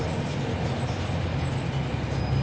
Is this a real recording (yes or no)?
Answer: yes